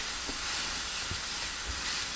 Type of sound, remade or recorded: remade